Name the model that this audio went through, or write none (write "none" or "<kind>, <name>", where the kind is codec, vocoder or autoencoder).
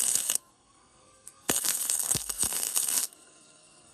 codec, SNAC